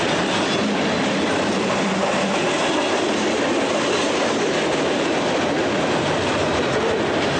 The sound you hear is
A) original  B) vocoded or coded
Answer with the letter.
A